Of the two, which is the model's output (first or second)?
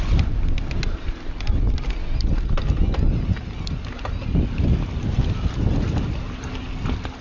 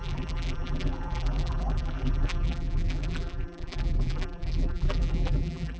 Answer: second